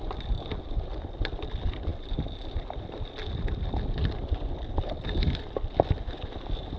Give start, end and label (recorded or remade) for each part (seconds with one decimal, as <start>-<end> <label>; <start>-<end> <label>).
0.0-6.8 recorded